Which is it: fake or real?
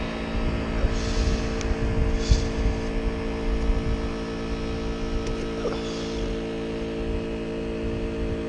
real